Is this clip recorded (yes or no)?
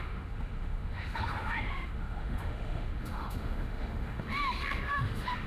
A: no